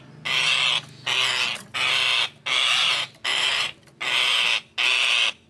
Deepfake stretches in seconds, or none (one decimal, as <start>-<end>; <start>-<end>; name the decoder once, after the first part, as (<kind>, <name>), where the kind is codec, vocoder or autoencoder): 2.8-4.0 (vocoder, BigVGAN v2)